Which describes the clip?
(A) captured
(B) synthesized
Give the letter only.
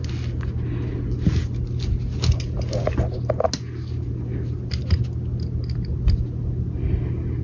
A